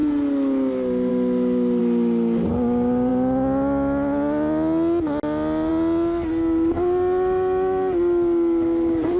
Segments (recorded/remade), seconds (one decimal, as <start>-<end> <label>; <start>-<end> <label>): 0.0-9.2 recorded